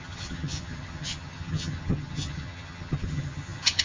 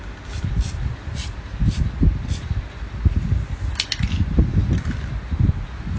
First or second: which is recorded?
second